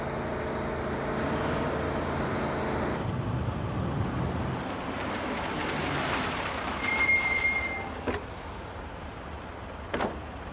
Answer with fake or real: real